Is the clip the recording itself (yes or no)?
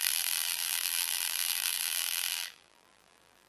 no